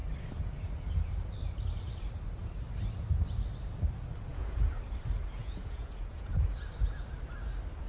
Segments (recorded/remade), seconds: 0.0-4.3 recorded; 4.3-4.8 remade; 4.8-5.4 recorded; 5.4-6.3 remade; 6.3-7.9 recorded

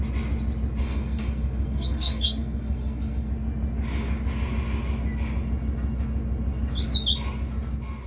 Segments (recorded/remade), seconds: 0.0-0.8 recorded; 0.8-3.3 remade; 3.3-8.1 recorded

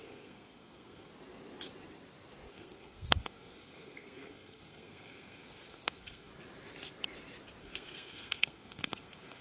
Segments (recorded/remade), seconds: 0.0-1.1 remade; 1.1-2.5 recorded; 2.5-6.3 remade; 6.3-7.6 recorded; 7.6-9.4 remade

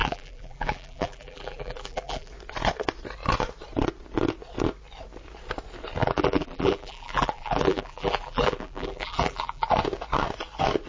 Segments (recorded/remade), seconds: 0.0-2.3 remade; 2.3-6.0 recorded; 6.0-9.7 remade; 9.7-10.9 recorded

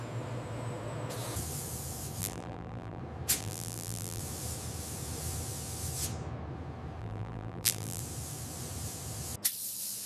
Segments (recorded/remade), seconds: 0.0-2.2 recorded; 2.2-3.0 remade; 3.0-3.4 recorded; 3.4-4.2 remade; 4.2-7.0 recorded; 7.0-8.0 remade; 8.0-10.1 recorded

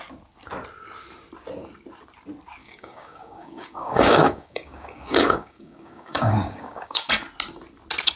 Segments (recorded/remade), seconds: 0.0-2.6 recorded; 2.6-7.1 remade; 7.1-8.2 recorded

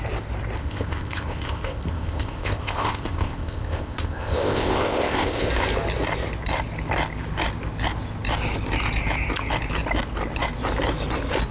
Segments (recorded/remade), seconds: 0.0-0.6 recorded; 0.6-5.5 remade; 5.5-11.5 recorded